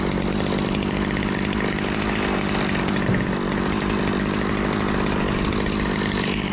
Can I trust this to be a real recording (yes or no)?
yes